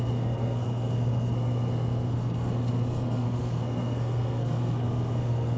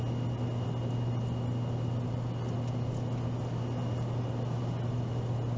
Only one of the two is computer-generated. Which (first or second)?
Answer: first